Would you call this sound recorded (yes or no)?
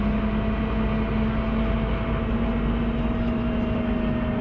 yes